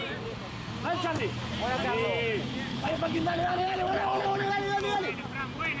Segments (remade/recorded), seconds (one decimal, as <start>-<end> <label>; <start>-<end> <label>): 0.0-2.7 recorded; 2.7-4.5 remade; 4.5-5.8 recorded